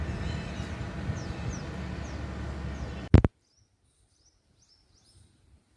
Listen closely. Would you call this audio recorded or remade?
recorded